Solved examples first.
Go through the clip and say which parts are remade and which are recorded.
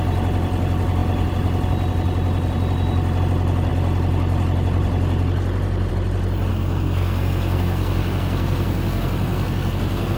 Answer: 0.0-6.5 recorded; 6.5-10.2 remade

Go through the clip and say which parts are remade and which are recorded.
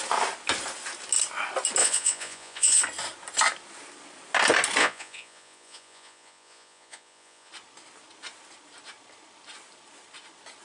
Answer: 0.0-1.8 recorded; 1.8-2.8 remade; 2.8-4.8 recorded; 4.8-7.5 remade; 7.5-10.6 recorded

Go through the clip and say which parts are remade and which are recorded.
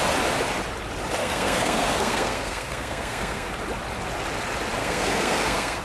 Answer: 0.0-1.2 recorded; 1.2-3.5 remade; 3.5-4.8 recorded; 4.8-5.8 remade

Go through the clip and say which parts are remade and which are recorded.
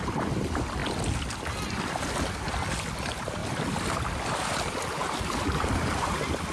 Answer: 0.0-3.4 recorded; 3.4-4.2 remade; 4.2-5.0 recorded; 5.0-6.0 remade; 6.0-6.5 recorded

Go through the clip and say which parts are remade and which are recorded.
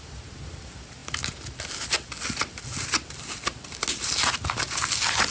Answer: 0.0-5.3 recorded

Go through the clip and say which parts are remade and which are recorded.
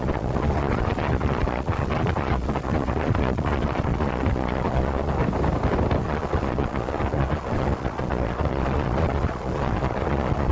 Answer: 0.0-5.2 remade; 5.2-6.0 recorded; 6.0-10.5 remade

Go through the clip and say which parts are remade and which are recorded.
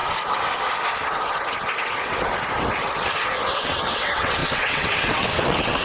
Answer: 0.0-3.5 recorded; 3.5-5.8 remade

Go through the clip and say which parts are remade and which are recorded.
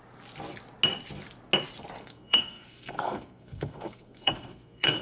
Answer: 0.0-2.0 recorded; 2.0-5.0 remade